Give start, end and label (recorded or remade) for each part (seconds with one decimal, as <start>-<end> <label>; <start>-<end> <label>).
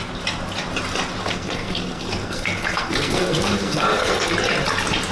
0.0-1.2 recorded; 1.2-4.3 remade; 4.3-5.1 recorded